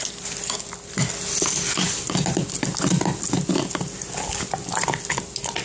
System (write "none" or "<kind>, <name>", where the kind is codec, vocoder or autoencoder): none